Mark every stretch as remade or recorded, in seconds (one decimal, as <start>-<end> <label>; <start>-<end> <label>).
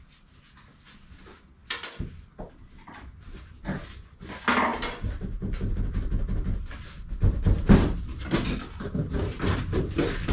0.0-10.3 recorded